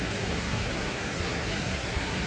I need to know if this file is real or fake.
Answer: fake